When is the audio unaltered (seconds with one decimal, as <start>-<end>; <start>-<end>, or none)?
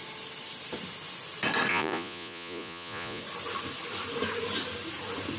0.0-1.7; 3.2-5.4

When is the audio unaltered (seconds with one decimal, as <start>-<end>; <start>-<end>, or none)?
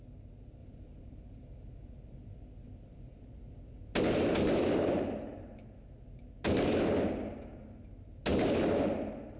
0.0-0.6; 4.0-8.3; 8.9-9.4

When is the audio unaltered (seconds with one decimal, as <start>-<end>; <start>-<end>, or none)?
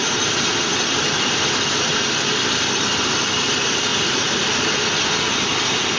0.0-6.0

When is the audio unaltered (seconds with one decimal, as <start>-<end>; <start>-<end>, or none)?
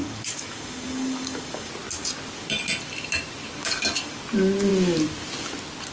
1.7-3.6; 4.2-5.9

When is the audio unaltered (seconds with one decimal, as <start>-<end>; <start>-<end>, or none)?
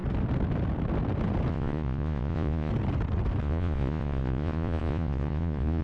0.0-1.5; 2.7-3.4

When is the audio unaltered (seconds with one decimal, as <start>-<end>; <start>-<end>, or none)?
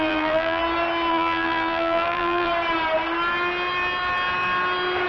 0.6-1.1; 2.5-5.1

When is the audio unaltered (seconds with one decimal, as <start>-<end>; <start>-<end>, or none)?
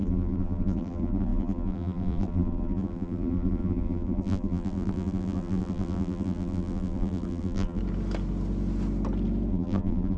7.8-9.5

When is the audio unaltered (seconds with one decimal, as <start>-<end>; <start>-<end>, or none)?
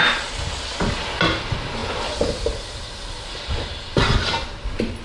0.0-5.0